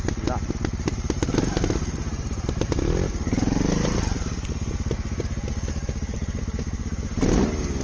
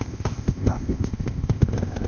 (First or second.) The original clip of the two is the first